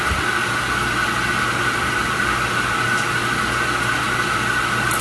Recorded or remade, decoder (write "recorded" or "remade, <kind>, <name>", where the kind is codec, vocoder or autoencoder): recorded